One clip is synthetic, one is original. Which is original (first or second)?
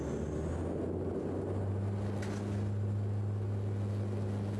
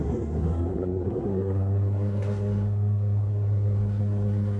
first